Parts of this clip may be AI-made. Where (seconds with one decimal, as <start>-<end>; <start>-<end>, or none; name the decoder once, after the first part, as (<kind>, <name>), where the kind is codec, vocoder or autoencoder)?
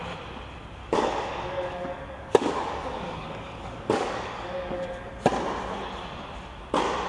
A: 0.8-5.1 (codec, DAC)